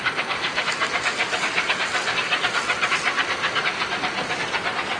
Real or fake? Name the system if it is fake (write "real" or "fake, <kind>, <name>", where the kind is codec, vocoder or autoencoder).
real